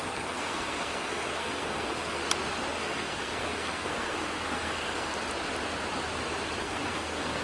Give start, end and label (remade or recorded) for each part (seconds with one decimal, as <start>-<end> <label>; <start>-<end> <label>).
0.0-2.2 remade; 2.2-2.7 recorded; 2.7-5.1 remade; 5.1-6.6 recorded; 6.6-7.4 remade